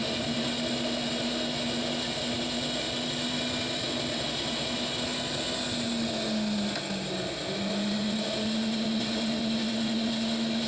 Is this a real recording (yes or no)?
yes